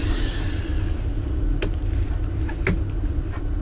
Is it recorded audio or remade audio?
recorded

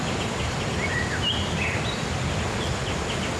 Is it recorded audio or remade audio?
recorded